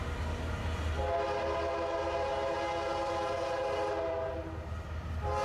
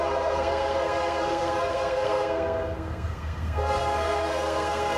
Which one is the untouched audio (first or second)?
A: first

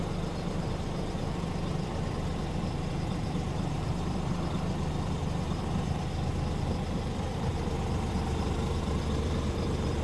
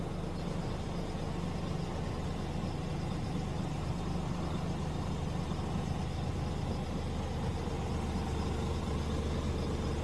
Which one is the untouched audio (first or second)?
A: second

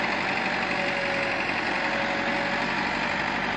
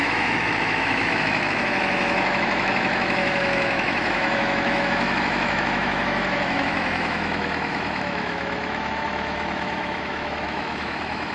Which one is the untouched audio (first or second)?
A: first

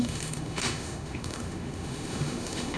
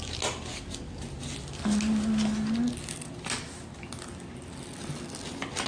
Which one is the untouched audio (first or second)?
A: second